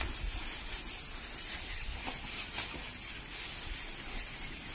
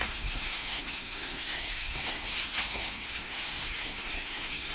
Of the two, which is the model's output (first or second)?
second